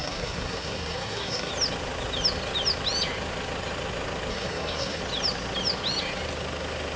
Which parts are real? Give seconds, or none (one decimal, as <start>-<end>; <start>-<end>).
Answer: 1.5-4.3; 5.0-7.0

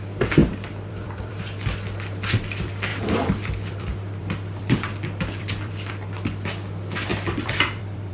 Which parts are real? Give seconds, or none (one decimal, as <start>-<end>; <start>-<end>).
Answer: 0.0-0.4; 1.4-2.9; 5.9-7.1

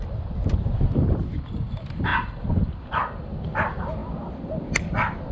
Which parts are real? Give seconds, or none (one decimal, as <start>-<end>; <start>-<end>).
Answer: 0.0-5.3

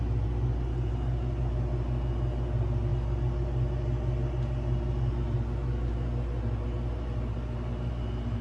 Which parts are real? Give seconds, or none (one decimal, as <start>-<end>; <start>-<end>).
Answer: 0.0-8.4

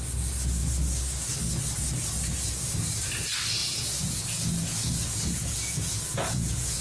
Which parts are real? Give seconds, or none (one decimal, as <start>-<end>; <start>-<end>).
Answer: 0.0-3.6

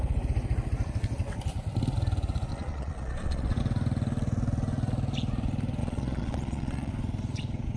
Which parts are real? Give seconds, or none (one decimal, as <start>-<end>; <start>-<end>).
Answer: 0.0-2.5; 3.6-5.8; 6.9-7.8

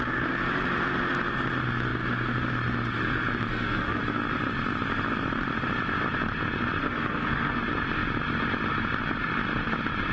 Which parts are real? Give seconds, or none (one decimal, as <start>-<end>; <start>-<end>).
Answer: 0.0-3.5; 4.0-6.8; 7.6-10.1

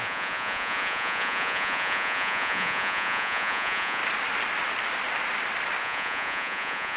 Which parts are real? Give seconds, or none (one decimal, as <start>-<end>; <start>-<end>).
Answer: 4.0-5.8